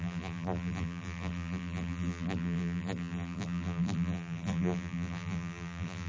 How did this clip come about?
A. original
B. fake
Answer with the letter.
B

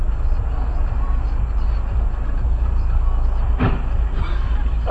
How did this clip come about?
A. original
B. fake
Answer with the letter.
A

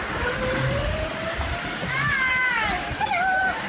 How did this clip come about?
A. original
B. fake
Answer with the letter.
A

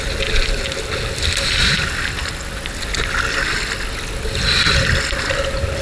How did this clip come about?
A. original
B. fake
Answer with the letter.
A